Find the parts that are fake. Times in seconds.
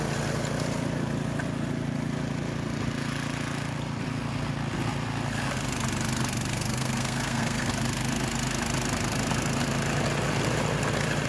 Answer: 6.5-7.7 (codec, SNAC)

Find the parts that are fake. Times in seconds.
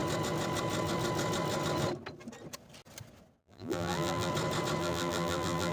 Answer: 3.4-4.3 (vocoder, BigVGAN v2); 4.8-5.7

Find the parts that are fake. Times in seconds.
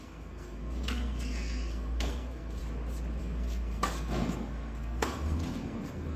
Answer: 0.0-2.6 (codec, SNAC); 3.2-6.2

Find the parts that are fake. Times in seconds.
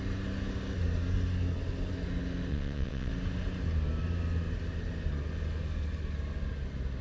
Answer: 2.5-3.1 (vocoder, WaveNeXt)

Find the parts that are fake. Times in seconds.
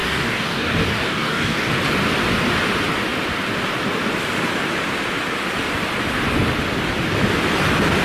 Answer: 0.0-1.7 (codec, DAC)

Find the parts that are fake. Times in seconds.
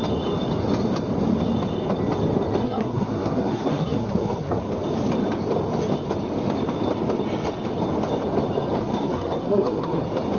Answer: 2.6-4.6 (codec, SNAC); 8.8-10.0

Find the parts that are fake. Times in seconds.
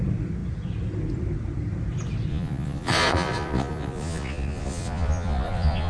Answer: 2.3-5.9 (vocoder, Vocos)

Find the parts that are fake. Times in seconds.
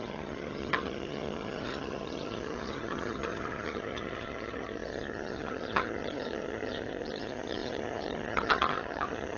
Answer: 0.0-9.4 (vocoder, HiFi-GAN)